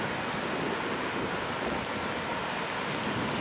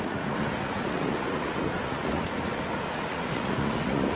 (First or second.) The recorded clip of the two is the first